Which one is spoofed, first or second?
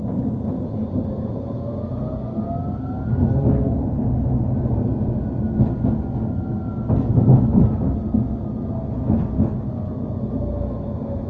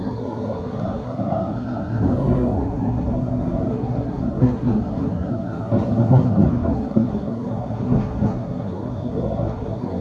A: second